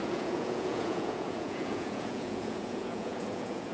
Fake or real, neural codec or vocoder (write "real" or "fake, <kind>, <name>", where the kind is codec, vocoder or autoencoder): fake, vocoder, Vocos